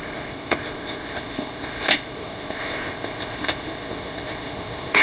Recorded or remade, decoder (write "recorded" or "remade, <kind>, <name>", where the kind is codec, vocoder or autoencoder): remade, codec, ZipCodec